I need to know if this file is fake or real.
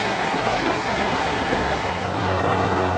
fake